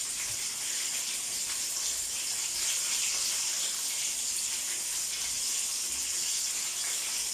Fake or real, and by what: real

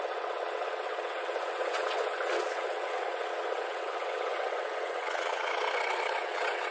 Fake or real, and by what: fake, vocoder, WaveNeXt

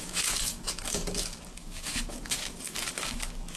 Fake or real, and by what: fake, codec, DAC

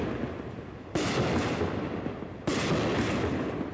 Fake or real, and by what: real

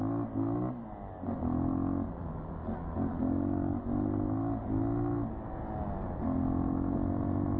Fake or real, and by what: real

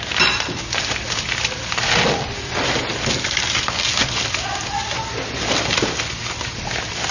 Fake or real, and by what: real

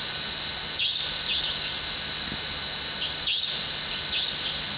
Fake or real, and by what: real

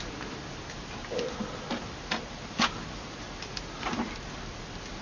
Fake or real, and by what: real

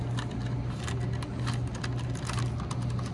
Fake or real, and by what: real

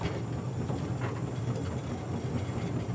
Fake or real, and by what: real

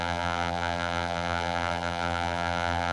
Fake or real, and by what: fake, vocoder, BigVGAN v2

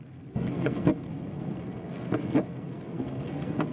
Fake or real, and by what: fake, codec, SNAC